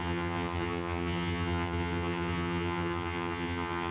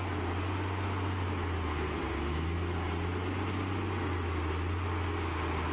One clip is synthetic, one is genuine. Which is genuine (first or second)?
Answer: second